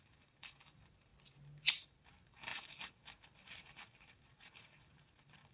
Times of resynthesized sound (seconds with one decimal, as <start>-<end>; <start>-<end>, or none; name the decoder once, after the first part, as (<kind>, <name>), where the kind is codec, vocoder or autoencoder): 0.0-1.1 (vocoder, BigVGAN v2); 1.7-5.5